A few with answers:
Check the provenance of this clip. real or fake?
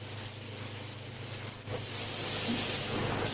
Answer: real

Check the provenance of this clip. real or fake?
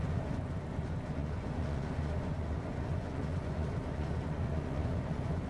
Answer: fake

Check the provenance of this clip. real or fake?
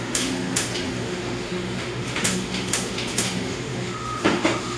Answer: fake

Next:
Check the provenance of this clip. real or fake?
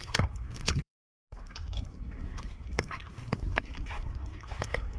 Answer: fake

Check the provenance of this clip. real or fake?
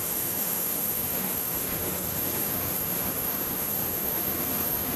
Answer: fake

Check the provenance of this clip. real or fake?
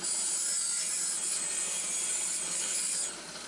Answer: fake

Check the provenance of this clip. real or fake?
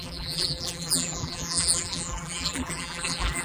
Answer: fake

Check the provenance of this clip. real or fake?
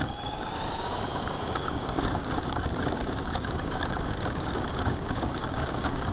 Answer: fake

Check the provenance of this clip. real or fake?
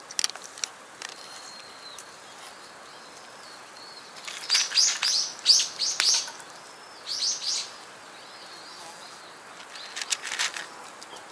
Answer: real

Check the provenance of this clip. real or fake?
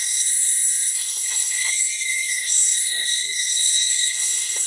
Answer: fake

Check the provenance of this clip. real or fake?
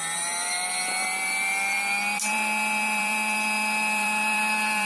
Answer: fake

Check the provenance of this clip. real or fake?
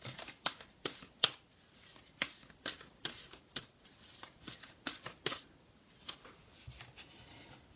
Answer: real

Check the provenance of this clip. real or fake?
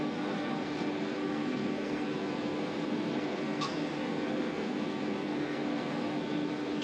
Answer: fake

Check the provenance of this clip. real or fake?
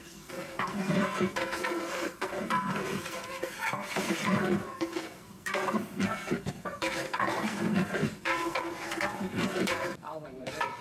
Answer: fake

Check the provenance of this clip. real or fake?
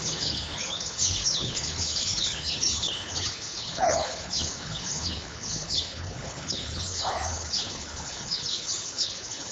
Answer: fake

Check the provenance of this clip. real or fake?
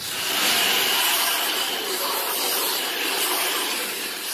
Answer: fake